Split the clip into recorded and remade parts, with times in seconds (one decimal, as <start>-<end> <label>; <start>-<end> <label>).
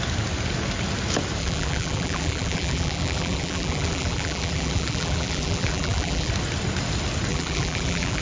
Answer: 0.0-1.4 recorded; 1.4-6.3 remade; 6.3-7.3 recorded; 7.3-8.2 remade